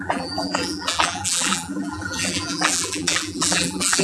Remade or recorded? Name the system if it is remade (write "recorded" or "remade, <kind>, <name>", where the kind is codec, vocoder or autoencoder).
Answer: remade, vocoder, BigVGAN v2